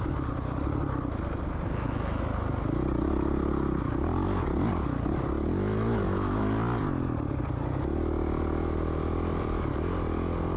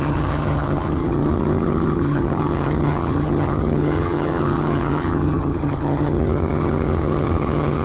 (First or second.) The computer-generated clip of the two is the second